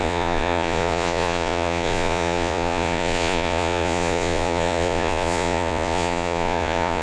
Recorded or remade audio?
remade